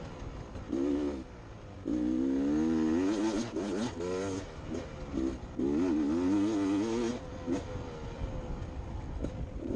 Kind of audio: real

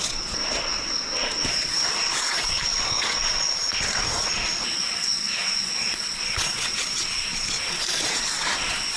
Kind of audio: fake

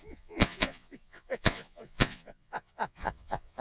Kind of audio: fake